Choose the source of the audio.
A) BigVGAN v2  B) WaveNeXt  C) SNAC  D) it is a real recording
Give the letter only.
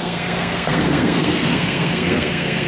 C